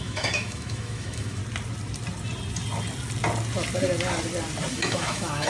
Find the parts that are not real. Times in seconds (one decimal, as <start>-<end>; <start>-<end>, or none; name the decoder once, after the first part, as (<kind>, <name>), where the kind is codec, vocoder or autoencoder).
0.0-1.4 (autoencoder, DAC-VAE); 4.7-5.5